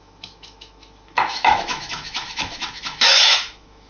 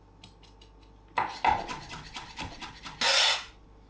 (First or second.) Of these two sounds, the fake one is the first